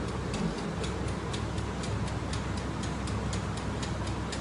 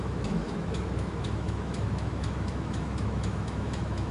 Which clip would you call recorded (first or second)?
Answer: first